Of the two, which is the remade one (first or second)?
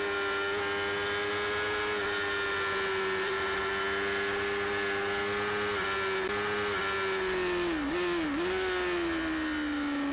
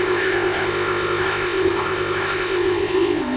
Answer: second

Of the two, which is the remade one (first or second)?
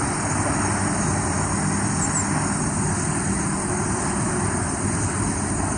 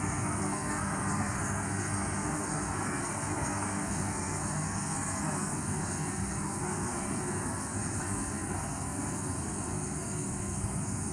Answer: second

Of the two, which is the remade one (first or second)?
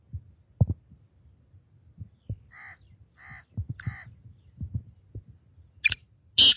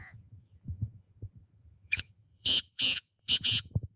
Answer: second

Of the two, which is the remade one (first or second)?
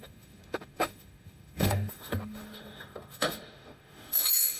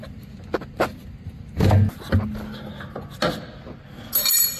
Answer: first